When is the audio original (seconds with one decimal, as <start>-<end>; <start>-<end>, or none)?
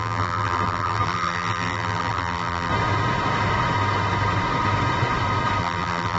2.7-5.6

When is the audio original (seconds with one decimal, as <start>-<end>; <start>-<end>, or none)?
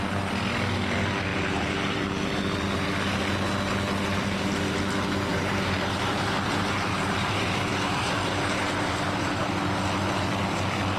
0.0-1.3; 2.0-5.3; 9.5-11.0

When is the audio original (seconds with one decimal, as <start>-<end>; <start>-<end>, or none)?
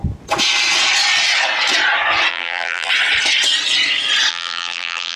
0.0-2.3; 2.9-4.3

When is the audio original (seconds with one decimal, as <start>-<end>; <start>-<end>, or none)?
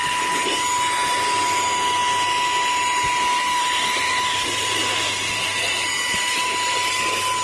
0.0-3.4; 6.9-7.4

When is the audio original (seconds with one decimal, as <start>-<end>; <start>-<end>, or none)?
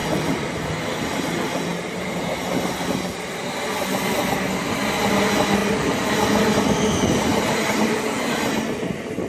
0.6-5.6; 6.1-7.3; 7.8-9.3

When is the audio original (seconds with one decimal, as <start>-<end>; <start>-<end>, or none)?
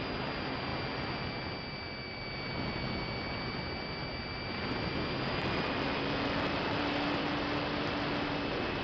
0.0-5.4; 7.8-8.8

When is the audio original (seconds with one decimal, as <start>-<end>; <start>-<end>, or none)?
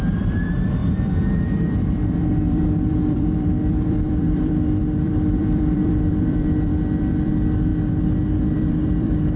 7.7-8.4